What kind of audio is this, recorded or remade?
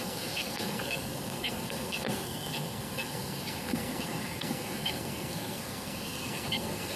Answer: remade